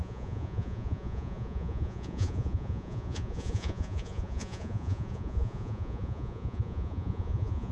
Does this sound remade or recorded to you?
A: remade